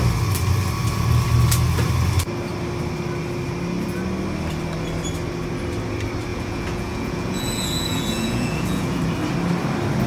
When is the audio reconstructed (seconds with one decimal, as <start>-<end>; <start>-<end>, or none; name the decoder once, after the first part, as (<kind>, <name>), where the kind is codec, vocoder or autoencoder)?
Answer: 6.3-9.0 (vocoder, Vocos)